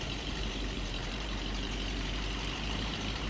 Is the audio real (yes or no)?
no